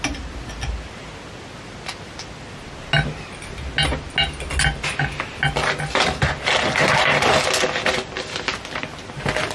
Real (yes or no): yes